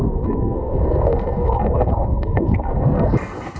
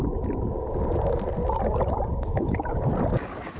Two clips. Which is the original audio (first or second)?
second